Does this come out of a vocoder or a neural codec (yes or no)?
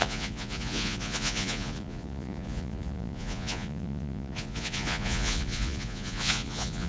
yes